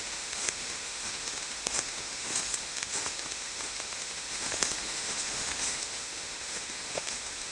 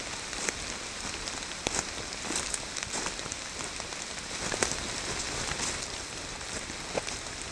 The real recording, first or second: second